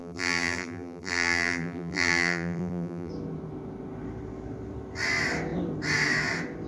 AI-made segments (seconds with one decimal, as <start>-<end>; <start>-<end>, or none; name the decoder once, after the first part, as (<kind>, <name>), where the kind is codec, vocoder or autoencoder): 0.0-3.1 (vocoder, BigVGAN v2)